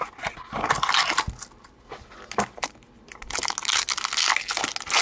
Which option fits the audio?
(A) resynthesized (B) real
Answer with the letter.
B